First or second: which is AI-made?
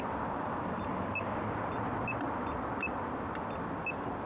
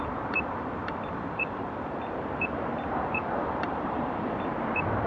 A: second